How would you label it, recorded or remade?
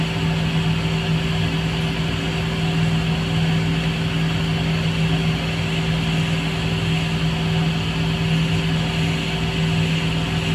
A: recorded